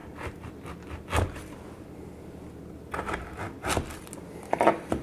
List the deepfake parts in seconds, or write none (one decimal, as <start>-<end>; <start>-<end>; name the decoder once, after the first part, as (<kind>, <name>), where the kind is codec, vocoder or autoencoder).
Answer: 0.0-0.5 (vocoder, BigVGAN v2)